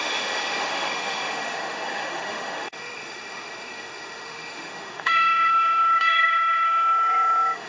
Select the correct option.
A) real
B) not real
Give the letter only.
B